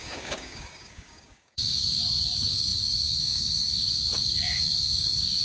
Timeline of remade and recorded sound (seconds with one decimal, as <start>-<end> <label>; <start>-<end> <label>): 0.0-5.4 remade